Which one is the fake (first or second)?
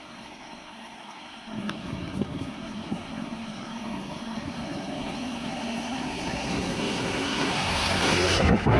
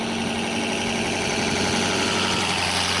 first